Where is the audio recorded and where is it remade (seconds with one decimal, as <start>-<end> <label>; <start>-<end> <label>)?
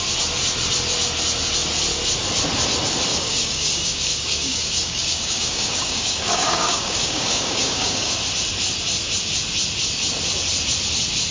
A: 0.0-3.1 recorded; 3.1-8.1 remade; 8.1-11.3 recorded